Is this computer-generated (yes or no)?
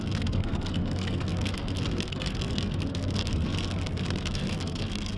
yes